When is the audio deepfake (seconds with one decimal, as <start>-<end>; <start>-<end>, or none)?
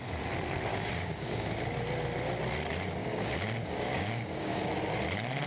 0.7-1.5; 3.0-4.7